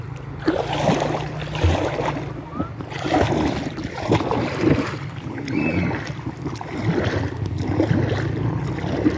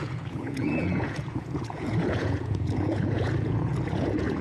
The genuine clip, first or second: first